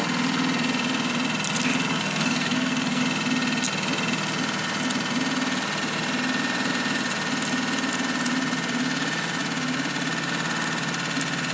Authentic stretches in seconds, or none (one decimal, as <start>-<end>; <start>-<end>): 0.0-1.9; 3.0-11.5